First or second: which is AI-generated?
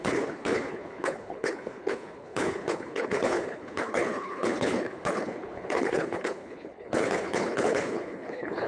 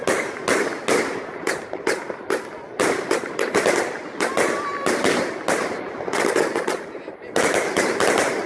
first